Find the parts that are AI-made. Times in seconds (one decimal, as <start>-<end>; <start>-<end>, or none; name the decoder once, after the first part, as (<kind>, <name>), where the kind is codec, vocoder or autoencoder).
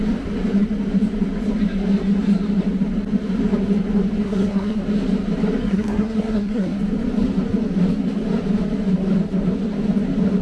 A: 4.2-4.8 (codec, SNAC); 5.6-6.8